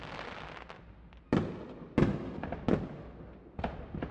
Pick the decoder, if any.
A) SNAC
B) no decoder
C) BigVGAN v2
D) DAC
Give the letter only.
B